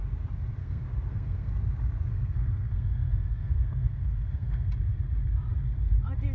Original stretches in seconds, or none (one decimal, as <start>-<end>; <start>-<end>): 0.0-0.6; 1.5-2.1; 4.7-6.3